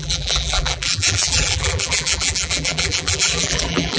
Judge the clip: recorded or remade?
remade